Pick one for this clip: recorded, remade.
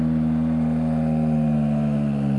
recorded